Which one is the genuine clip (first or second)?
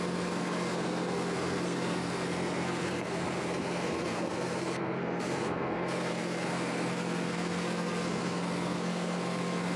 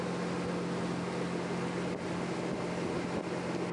second